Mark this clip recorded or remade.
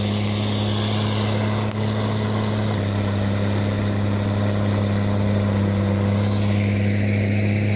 recorded